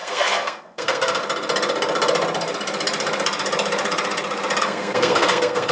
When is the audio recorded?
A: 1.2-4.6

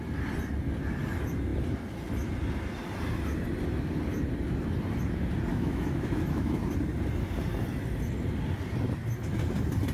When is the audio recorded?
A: 0.0-5.5; 6.6-9.9